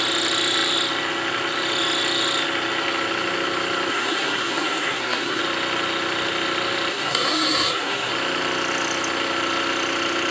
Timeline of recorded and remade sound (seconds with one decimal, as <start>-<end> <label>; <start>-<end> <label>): 0.0-3.9 recorded; 3.9-5.4 remade; 5.4-6.9 recorded; 6.9-8.1 remade; 8.1-10.3 recorded